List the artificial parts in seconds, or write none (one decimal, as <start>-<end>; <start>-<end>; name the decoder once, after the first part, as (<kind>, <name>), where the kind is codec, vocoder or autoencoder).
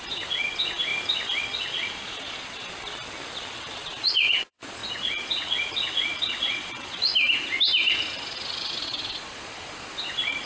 0.0-0.9 (vocoder, Vocos); 1.5-2.7; 3.5-7.1; 7.9-10.5